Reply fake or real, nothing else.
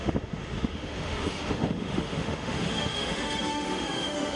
fake